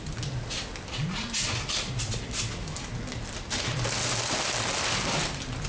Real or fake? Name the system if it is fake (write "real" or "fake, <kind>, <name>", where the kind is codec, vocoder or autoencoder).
real